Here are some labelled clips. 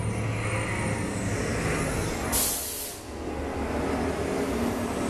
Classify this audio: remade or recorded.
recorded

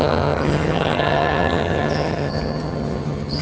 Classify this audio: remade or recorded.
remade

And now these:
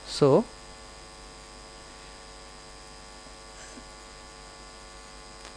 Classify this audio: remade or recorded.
recorded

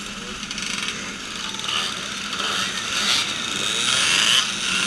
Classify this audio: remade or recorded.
recorded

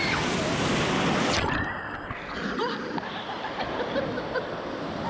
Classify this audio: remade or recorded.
recorded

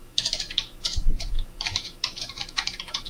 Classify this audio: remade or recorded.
remade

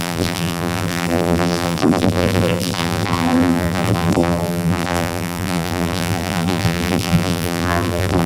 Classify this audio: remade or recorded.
remade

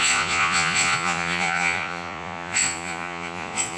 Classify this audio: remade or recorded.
remade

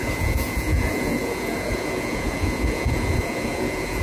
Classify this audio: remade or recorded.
remade